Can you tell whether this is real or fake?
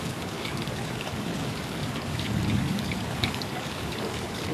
fake